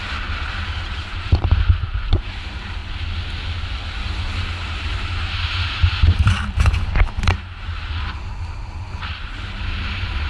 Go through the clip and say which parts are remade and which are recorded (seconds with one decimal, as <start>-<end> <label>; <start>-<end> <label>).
0.0-2.8 remade; 2.8-5.0 recorded; 5.0-7.7 remade; 7.7-8.6 recorded; 8.6-10.3 remade